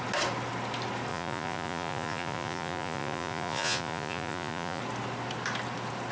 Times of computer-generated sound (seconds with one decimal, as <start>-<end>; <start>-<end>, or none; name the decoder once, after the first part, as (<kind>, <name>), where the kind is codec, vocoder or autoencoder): 1.1-4.8 (vocoder, Vocos)